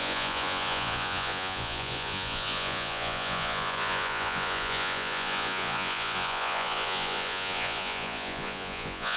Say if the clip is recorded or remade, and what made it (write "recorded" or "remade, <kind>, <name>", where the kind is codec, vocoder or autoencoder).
remade, vocoder, Vocos